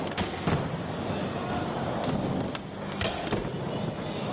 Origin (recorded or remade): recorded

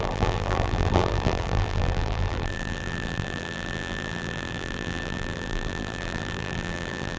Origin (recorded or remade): remade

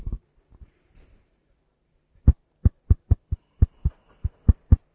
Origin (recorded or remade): remade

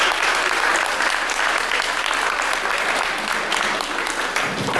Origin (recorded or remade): remade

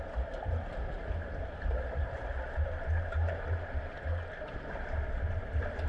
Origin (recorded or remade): recorded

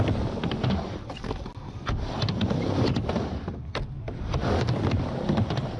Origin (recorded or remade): recorded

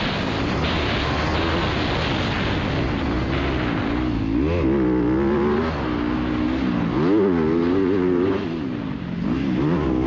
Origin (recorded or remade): recorded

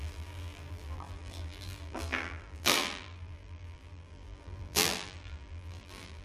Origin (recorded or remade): remade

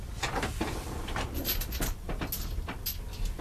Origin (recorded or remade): recorded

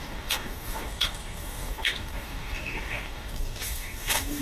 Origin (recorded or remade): remade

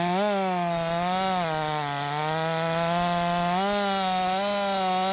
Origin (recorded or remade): recorded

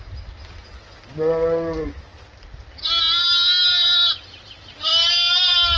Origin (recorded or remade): recorded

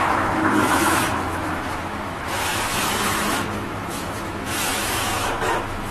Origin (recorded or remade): remade